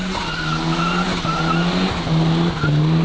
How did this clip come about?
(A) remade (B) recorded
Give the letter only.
B